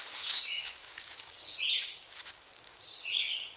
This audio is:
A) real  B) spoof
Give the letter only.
B